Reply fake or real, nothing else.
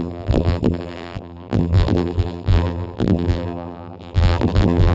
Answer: fake